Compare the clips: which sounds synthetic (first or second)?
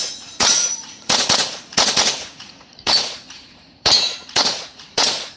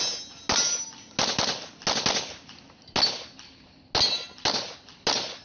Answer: first